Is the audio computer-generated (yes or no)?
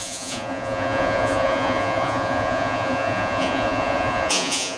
yes